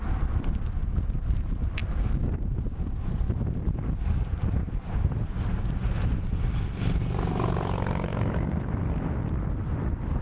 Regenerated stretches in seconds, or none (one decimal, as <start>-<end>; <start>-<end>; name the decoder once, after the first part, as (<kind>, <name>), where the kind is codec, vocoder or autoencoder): none